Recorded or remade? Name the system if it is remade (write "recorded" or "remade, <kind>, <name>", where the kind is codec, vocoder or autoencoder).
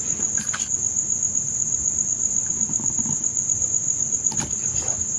recorded